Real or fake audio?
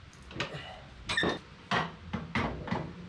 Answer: real